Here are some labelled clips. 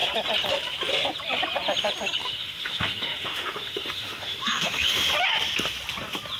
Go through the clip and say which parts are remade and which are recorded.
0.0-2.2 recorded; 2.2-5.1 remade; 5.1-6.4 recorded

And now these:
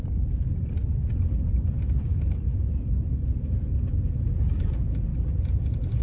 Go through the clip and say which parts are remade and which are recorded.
0.0-1.0 recorded; 1.0-3.6 remade; 3.6-5.1 recorded; 5.1-5.6 remade; 5.6-6.0 recorded

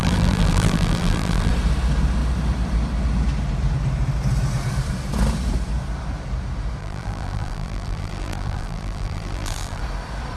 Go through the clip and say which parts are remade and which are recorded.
0.0-1.5 remade; 1.5-6.8 recorded; 6.8-9.8 remade; 9.8-10.4 recorded

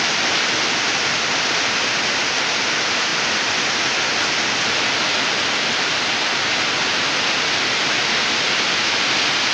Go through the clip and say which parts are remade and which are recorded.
0.0-9.5 recorded

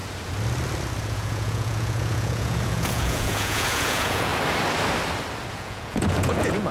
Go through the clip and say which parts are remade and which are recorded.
0.0-1.0 recorded; 1.0-4.3 remade; 4.3-5.5 recorded; 5.5-6.7 remade

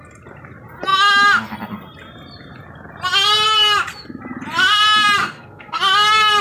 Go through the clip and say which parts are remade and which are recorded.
0.0-5.2 recorded; 5.2-5.8 remade; 5.8-6.4 recorded

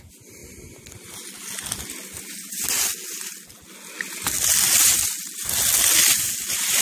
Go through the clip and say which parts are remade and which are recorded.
0.0-6.8 recorded

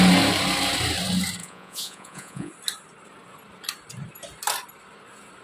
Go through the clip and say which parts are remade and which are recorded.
0.0-1.4 recorded; 1.4-2.5 remade; 2.5-5.4 recorded